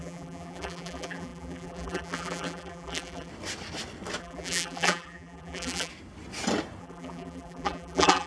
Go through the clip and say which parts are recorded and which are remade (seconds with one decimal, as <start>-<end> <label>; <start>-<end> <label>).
0.0-3.3 remade; 3.3-4.2 recorded; 4.2-5.9 remade; 5.9-6.8 recorded; 6.8-8.3 remade